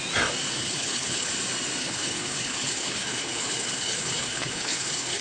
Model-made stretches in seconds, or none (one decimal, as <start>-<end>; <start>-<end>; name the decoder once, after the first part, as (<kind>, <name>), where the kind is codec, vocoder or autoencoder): 0.6-1.3 (codec, HILCodec); 1.8-5.2